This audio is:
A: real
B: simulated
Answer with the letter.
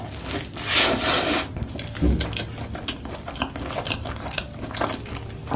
A